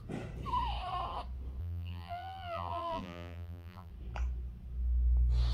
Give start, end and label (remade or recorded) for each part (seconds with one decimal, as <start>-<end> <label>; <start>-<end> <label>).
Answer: 0.0-1.6 recorded; 1.6-3.9 remade; 3.9-5.5 recorded

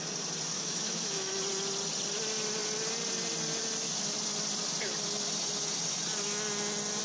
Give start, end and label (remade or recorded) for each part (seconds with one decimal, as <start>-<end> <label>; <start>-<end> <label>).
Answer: 0.0-0.5 recorded; 0.5-1.4 remade; 1.4-7.0 recorded

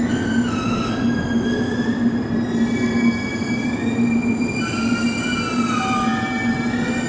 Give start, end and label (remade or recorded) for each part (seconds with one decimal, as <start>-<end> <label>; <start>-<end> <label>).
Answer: 0.0-7.1 recorded

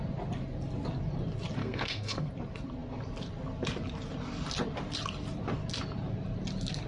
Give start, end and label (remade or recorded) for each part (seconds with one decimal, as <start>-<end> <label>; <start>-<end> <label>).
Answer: 0.0-1.6 recorded; 1.6-2.3 remade; 2.3-6.9 recorded

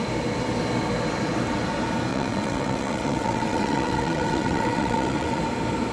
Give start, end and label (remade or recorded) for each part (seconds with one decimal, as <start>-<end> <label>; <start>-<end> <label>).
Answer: 0.0-2.1 recorded; 2.1-5.4 remade; 5.4-5.9 recorded

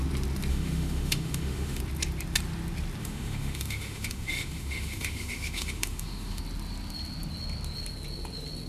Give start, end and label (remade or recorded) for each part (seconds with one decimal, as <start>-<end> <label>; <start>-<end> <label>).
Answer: 0.0-0.5 recorded; 0.5-1.8 remade; 1.8-3.0 recorded; 3.0-6.4 remade; 6.4-8.7 recorded

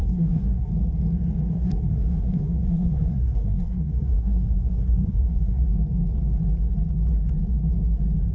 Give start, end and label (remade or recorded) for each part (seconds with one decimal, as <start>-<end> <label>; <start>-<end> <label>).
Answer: 0.0-0.7 remade; 0.7-1.5 recorded; 1.5-5.7 remade; 5.7-8.3 recorded